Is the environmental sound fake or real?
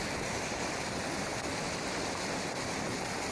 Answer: real